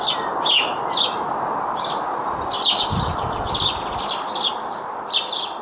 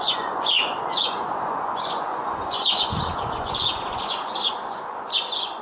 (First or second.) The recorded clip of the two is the first